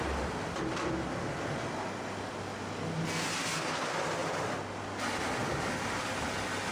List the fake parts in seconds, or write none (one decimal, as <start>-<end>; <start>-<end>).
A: none